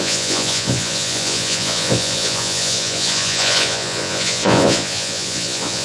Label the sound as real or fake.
fake